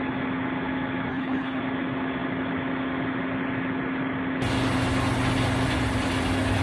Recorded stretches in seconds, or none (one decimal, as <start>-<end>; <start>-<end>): 0.0-1.1; 1.6-6.6